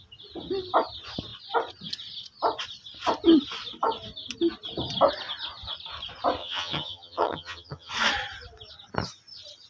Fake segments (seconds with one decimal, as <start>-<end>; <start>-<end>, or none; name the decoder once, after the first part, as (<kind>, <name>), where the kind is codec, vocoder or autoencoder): 6.4-7.9 (vocoder, HiFi-GAN)